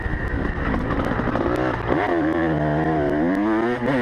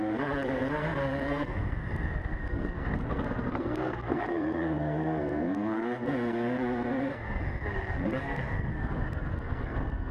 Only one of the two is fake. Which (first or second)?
second